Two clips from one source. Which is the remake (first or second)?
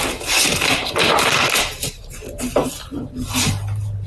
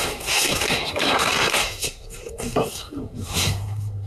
second